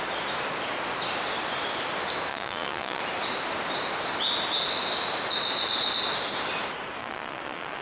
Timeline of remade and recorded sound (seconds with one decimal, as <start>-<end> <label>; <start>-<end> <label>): 0.0-2.3 recorded; 2.3-3.0 remade; 3.0-7.0 recorded; 7.0-7.8 remade